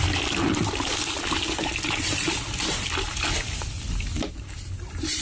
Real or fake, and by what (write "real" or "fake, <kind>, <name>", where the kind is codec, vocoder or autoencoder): real